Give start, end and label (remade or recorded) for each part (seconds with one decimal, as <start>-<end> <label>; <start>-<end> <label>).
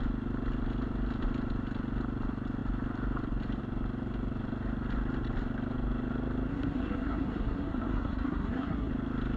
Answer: 0.0-6.5 recorded; 6.5-8.9 remade; 8.9-9.4 recorded